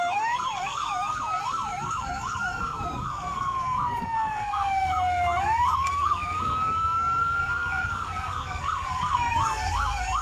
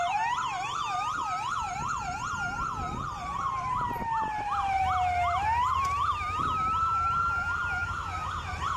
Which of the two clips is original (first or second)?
second